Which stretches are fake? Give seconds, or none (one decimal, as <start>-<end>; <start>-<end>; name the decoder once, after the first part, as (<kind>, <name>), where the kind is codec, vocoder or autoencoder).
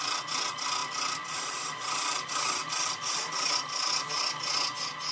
0.8-3.3 (vocoder, BigVGAN v2)